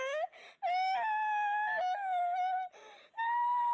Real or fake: real